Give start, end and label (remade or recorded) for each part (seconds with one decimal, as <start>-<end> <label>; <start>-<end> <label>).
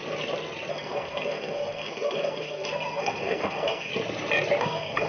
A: 0.0-0.7 recorded; 0.7-3.9 remade; 3.9-4.6 recorded; 4.6-5.1 remade